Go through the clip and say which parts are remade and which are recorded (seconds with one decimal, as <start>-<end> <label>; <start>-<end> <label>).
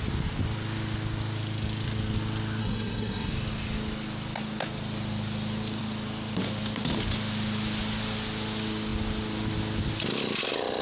0.0-2.6 recorded; 2.6-3.3 remade; 3.3-10.8 recorded